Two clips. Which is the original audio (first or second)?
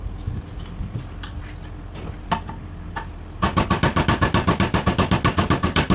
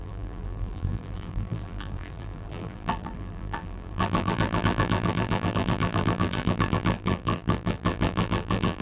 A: first